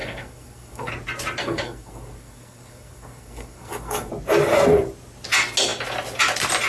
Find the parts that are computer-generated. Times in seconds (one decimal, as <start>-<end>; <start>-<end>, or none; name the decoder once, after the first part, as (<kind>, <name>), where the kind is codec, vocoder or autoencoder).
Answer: 0.0-0.9 (codec, SNAC); 1.4-4.1